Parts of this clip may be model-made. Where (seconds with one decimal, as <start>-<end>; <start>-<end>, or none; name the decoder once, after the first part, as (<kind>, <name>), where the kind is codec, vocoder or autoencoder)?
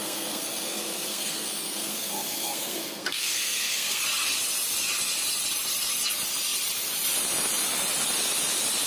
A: 0.0-4.0 (codec, SNAC)